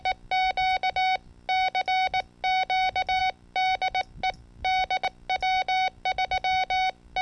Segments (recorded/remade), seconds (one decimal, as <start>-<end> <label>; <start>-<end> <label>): 0.0-7.2 recorded

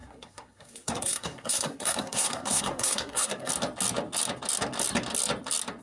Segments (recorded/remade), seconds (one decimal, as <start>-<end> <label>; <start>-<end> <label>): 0.0-3.5 remade; 3.5-5.8 recorded

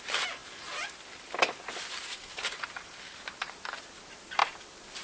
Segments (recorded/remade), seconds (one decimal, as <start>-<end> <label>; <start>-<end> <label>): 0.0-5.0 recorded

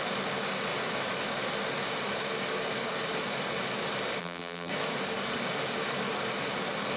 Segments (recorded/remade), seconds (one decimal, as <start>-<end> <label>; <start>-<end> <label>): 0.0-4.2 recorded; 4.2-4.7 remade; 4.7-7.0 recorded

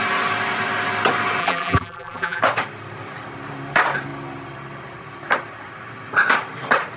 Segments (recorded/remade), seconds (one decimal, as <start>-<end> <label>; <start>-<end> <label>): 0.0-1.4 recorded; 1.4-2.4 remade; 2.4-7.0 recorded

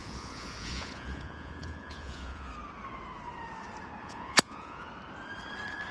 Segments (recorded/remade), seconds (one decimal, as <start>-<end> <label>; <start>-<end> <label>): 0.0-2.5 remade; 2.5-4.0 recorded; 4.0-4.9 remade; 4.9-5.9 recorded

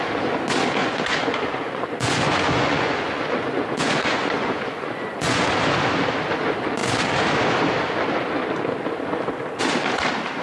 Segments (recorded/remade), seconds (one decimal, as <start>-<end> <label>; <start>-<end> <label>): 0.0-0.8 recorded; 0.8-5.5 remade; 5.5-10.4 recorded

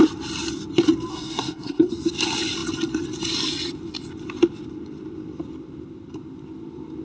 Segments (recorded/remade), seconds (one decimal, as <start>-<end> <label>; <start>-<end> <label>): 0.0-1.1 recorded; 1.1-1.9 remade; 1.9-7.0 recorded